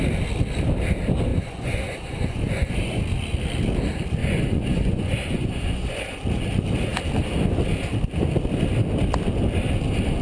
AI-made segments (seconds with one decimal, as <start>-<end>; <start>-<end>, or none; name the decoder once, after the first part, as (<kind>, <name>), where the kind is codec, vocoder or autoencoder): 1.3-3.0 (vocoder, Vocos); 4.2-6.0